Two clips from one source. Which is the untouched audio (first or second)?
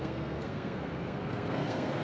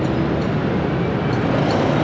second